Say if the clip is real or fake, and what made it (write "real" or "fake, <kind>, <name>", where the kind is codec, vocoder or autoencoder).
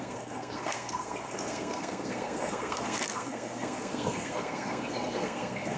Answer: fake, codec, SNAC